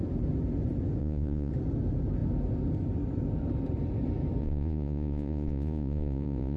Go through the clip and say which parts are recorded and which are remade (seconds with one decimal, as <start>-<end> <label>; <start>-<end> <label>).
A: 0.0-1.0 recorded; 1.0-1.5 remade; 1.5-4.4 recorded; 4.4-6.6 remade